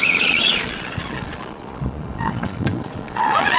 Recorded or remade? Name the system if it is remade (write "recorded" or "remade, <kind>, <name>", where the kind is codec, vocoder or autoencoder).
remade, vocoder, Vocos